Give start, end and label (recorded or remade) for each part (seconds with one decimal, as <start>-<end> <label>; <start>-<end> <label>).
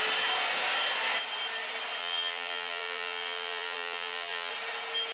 0.0-2.0 recorded; 2.0-4.5 remade; 4.5-5.1 recorded